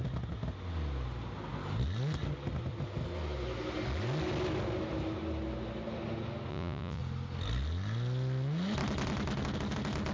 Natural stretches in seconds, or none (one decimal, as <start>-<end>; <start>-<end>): 0.0-6.5; 7.0-10.1